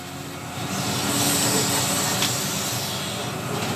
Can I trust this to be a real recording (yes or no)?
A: yes